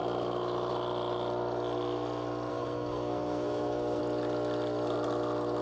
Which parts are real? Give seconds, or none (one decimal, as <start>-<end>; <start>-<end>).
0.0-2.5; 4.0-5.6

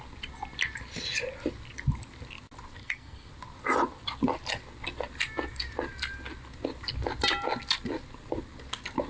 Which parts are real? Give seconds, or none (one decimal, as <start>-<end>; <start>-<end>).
0.0-2.8; 3.3-9.1

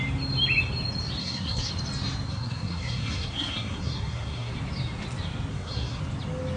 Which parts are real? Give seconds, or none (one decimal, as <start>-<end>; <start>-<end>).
0.0-1.2; 1.7-2.3; 4.5-5.5; 6.0-6.6

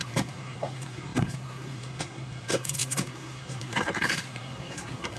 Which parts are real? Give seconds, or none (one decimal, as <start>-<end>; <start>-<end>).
none

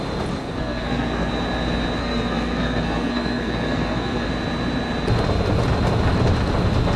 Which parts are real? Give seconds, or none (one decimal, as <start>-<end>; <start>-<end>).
0.0-0.4; 1.3-2.0; 4.3-7.0

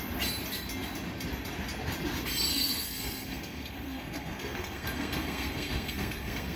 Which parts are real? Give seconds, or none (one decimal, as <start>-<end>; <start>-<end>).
0.0-2.5